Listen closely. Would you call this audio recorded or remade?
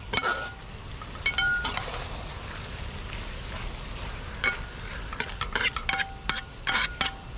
recorded